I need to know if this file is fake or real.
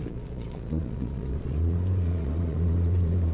fake